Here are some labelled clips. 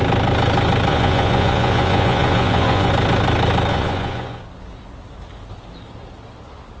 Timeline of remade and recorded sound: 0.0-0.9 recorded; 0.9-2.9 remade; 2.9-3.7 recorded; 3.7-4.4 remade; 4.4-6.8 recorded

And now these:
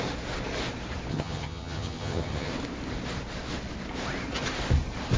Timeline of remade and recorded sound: 0.0-1.1 recorded; 1.1-2.5 remade; 2.5-5.2 recorded

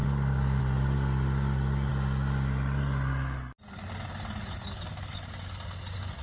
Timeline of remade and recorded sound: 0.0-0.6 remade; 0.6-6.2 recorded

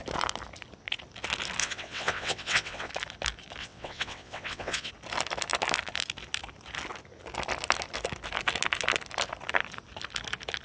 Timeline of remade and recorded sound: 0.0-1.6 recorded; 1.6-2.9 remade; 2.9-3.6 recorded; 3.6-4.9 remade; 4.9-10.6 recorded

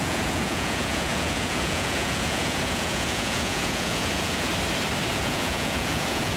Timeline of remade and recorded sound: 0.0-4.5 remade; 4.5-5.1 recorded; 5.1-6.4 remade

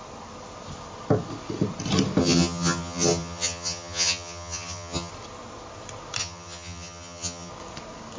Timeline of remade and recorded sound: 0.0-2.2 recorded; 2.2-5.1 remade; 5.1-6.2 recorded; 6.2-7.5 remade; 7.5-8.2 recorded